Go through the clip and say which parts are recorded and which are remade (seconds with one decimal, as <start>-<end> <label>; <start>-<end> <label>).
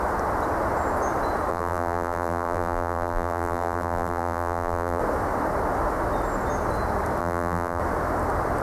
0.0-1.5 recorded; 1.5-5.0 remade; 5.0-7.2 recorded; 7.2-7.8 remade; 7.8-8.6 recorded